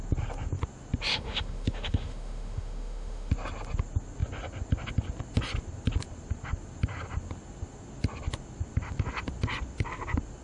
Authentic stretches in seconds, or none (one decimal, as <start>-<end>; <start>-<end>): 0.0-1.1; 3.3-10.4